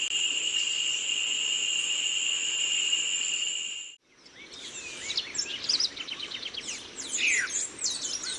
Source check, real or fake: real